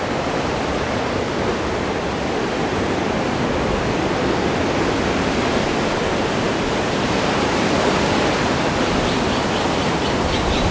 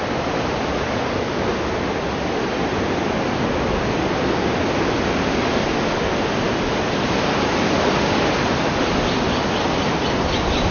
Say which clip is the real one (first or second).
second